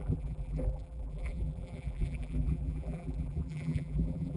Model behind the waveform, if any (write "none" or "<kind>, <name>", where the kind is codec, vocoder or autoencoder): vocoder, BigVGAN v2